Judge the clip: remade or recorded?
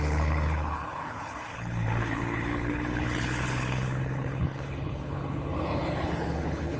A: remade